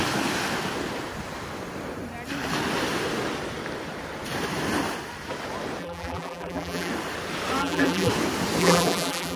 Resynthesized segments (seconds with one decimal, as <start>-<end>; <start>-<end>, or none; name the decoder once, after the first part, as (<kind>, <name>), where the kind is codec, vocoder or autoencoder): 5.8-6.9 (vocoder, BigVGAN v2); 7.6-8.1; 8.6-9.4